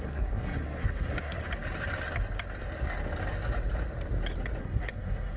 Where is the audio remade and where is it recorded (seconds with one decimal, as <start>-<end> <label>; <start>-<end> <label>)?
0.0-1.4 remade; 1.4-4.6 recorded; 4.6-5.4 remade